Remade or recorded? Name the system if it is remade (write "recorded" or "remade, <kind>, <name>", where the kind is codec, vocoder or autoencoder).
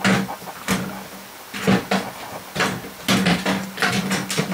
recorded